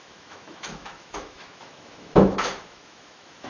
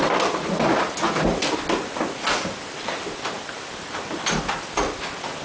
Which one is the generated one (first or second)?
first